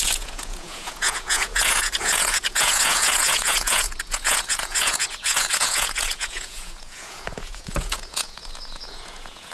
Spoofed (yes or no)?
yes